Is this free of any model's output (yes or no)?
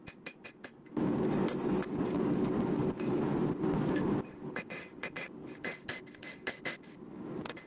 yes